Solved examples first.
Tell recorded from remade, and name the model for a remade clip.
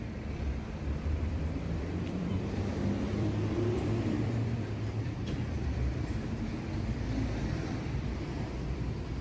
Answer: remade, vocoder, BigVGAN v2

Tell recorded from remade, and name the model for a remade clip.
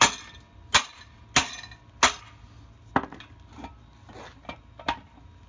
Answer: recorded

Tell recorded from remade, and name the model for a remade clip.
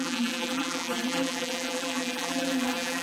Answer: remade, vocoder, BigVGAN v2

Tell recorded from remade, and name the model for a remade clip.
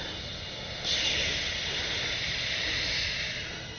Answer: recorded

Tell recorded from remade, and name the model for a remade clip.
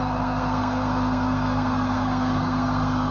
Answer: remade, codec, SNAC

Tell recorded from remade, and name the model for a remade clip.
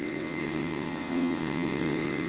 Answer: remade, vocoder, WaveNeXt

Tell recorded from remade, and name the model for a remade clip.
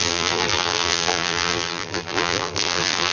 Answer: remade, vocoder, BigVGAN v2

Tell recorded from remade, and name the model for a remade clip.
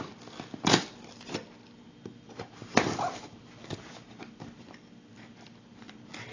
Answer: recorded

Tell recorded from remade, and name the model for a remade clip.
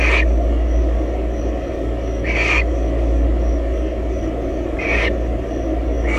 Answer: remade, codec, DAC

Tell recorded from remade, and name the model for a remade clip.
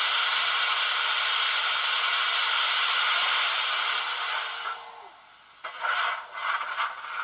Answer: recorded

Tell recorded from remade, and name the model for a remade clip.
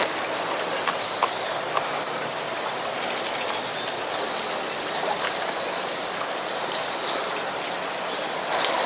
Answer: remade, vocoder, BigVGAN v2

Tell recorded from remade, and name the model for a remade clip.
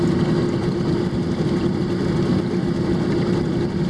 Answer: recorded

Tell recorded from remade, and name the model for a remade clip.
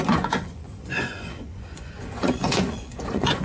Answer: remade, vocoder, Vocos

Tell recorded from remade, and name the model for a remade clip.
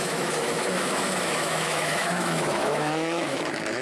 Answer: remade, autoencoder, DAC-VAE